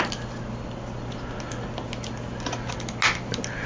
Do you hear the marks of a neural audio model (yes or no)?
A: no